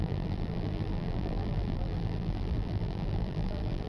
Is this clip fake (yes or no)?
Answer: yes